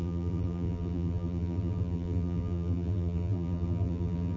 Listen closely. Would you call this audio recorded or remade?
remade